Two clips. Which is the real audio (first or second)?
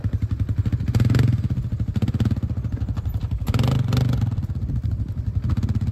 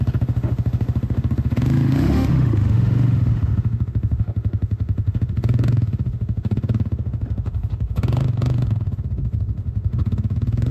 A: first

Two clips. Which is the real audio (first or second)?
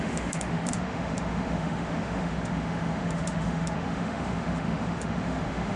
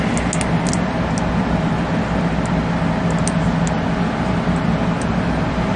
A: second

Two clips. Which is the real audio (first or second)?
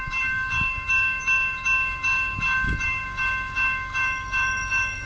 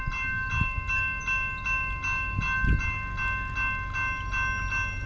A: second